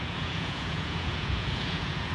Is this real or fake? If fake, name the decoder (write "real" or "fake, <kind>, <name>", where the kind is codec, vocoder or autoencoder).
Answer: fake, vocoder, Vocos